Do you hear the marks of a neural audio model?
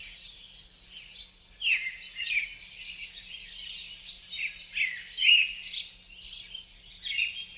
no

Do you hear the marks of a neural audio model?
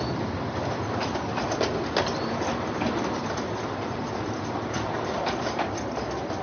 no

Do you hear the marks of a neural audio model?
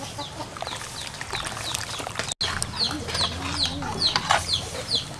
no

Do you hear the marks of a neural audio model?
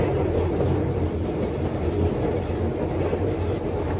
no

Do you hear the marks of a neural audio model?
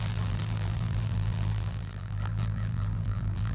yes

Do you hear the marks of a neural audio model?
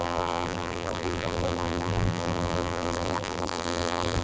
yes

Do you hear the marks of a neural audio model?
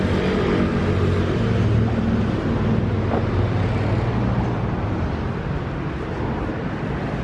no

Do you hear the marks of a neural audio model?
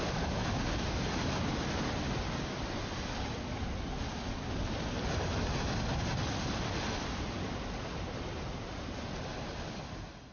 no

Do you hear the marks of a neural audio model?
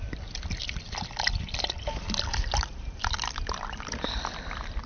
yes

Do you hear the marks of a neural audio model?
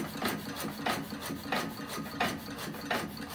no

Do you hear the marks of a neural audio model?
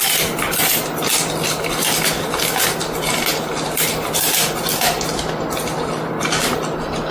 no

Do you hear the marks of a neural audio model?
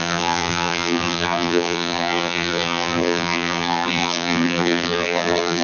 yes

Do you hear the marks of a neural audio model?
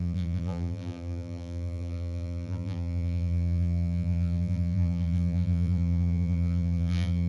yes